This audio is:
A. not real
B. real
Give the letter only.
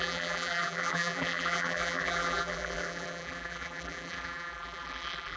A